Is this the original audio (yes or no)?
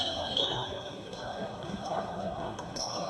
no